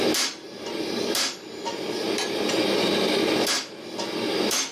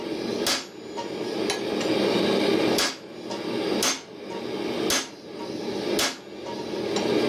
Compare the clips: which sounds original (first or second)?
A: second